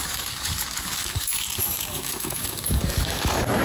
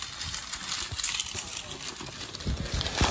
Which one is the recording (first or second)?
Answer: second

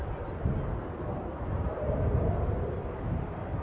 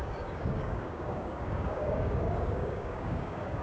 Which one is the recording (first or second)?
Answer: first